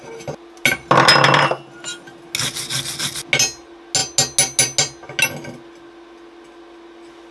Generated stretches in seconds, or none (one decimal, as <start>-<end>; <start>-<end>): none